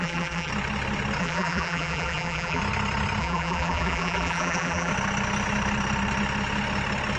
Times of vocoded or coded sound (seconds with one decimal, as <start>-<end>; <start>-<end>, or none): 0.0-0.5; 1.2-2.6; 3.2-4.9